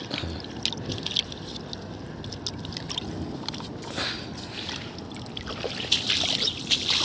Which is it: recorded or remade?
recorded